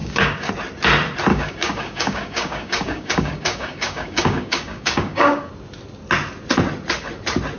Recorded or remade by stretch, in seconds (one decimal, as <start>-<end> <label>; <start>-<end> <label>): 0.0-0.5 remade; 0.5-1.3 recorded; 1.3-5.5 remade; 5.5-7.6 recorded